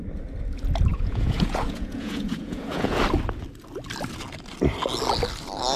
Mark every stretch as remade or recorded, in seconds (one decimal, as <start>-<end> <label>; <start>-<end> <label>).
0.0-0.9 recorded; 0.9-3.0 remade; 3.0-5.8 recorded